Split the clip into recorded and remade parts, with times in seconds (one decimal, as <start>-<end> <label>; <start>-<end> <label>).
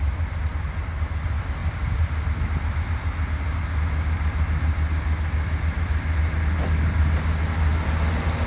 0.0-8.5 recorded